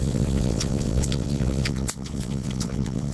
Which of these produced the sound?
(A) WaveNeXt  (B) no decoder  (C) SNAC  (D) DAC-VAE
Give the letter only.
A